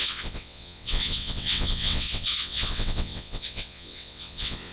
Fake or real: fake